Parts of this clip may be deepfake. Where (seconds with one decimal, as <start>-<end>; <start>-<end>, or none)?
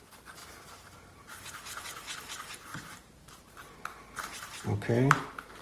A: 0.4-1.8; 2.7-3.5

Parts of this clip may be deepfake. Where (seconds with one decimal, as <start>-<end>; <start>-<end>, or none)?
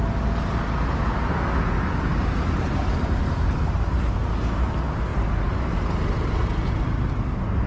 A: none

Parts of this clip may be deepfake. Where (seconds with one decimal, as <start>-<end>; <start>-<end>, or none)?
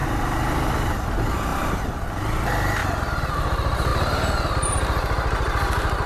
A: 0.0-1.1; 1.5-2.1; 2.8-3.3; 3.9-6.1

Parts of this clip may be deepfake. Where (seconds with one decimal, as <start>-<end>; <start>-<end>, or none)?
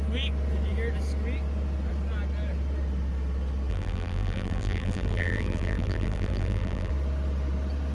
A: 3.7-6.9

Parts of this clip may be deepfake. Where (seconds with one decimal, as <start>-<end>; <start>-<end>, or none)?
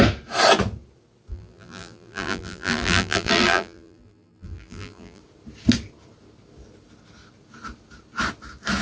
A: 1.3-5.2